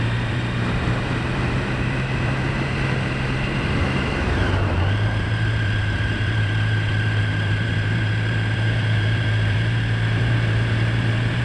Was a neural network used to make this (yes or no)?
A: yes